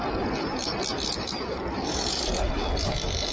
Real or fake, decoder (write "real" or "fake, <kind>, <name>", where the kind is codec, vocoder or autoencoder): real